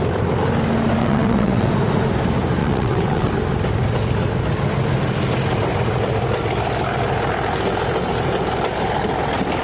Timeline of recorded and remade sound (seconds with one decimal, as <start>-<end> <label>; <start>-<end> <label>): 0.0-1.0 recorded; 1.0-1.7 remade; 1.7-2.6 recorded; 2.6-3.3 remade; 3.3-9.6 recorded